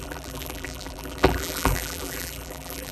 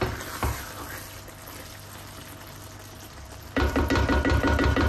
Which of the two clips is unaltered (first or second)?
second